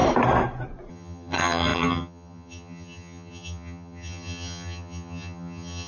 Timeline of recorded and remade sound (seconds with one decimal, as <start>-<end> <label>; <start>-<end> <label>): 0.0-0.9 recorded; 0.9-5.9 remade

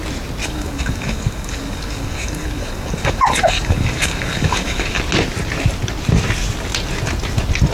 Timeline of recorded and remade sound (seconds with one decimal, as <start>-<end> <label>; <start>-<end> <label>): 0.0-0.4 recorded; 0.4-5.0 remade; 5.0-7.7 recorded

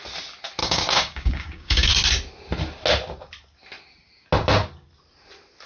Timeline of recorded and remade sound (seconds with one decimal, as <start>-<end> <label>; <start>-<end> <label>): 0.0-0.6 recorded; 0.6-1.9 remade; 1.9-5.7 recorded

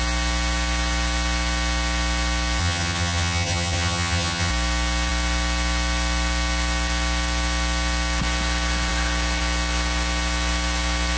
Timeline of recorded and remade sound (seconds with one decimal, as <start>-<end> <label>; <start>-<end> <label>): 0.0-2.6 recorded; 2.6-4.5 remade; 4.5-11.2 recorded

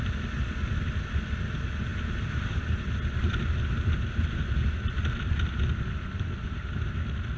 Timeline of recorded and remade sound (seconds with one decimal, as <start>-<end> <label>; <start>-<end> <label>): 0.0-7.4 recorded